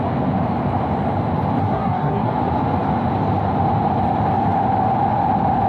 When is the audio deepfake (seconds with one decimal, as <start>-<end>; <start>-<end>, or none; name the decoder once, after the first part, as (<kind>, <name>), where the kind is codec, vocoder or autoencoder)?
1.6-2.3 (codec, SNAC)